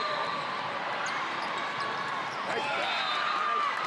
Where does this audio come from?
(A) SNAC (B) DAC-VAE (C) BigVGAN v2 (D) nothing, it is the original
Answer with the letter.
C